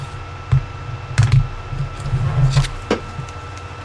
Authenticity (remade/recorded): recorded